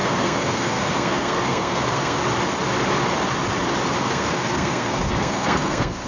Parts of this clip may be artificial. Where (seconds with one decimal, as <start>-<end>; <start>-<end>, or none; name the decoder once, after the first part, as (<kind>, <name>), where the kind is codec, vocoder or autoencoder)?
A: 0.0-2.2 (codec, SNAC); 4.0-6.1